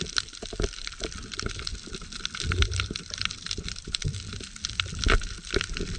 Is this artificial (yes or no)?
no